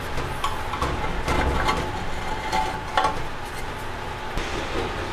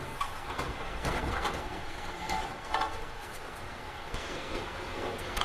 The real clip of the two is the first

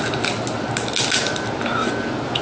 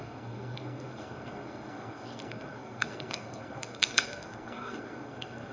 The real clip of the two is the first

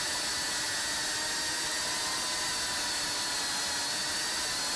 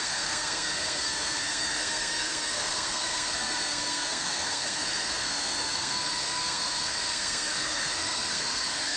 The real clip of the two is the first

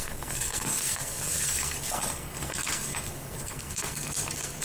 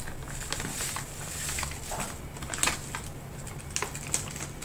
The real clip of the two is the second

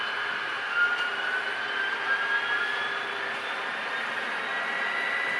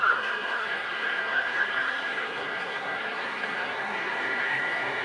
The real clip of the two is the first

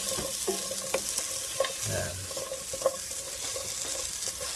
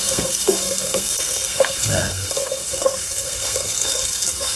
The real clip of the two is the first